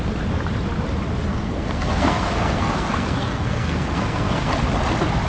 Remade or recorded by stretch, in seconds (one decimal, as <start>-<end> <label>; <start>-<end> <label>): 0.0-1.3 recorded; 1.3-4.5 remade; 4.5-5.3 recorded